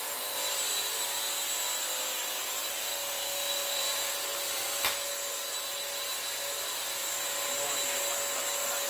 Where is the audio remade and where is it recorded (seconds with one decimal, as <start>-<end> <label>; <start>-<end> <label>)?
0.0-2.8 recorded; 2.8-3.8 remade; 3.8-8.9 recorded